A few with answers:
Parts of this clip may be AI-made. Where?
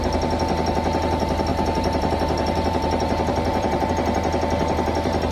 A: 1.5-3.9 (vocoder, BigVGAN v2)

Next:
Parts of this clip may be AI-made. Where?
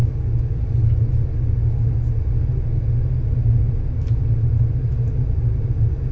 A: none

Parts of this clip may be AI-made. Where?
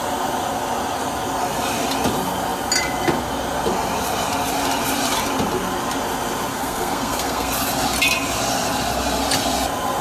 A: 6.5-7.5 (codec, SNAC)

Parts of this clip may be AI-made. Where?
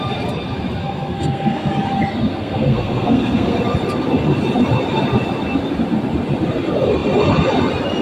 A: 0.8-1.7 (codec, SNAC); 2.3-3.6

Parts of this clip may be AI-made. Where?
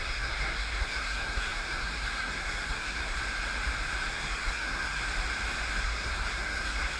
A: 0.0-3.2 (codec, SNAC); 4.1-5.0; 5.8-7.0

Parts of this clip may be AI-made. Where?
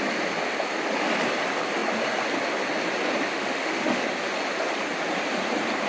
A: 3.3-4.0 (autoencoder, DAC-VAE)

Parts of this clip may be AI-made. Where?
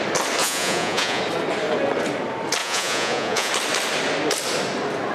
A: 0.4-1.2 (vocoder, Vocos); 2.6-3.5